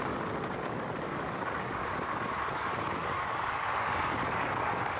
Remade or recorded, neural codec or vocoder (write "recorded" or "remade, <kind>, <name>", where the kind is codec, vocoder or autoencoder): remade, codec, DAC